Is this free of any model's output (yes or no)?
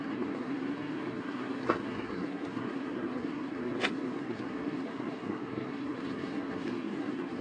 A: no